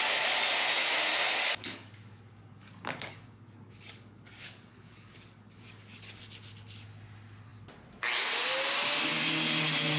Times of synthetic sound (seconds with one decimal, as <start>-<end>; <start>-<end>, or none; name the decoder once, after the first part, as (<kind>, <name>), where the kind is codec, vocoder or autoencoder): 1.2-6.2 (codec, DAC)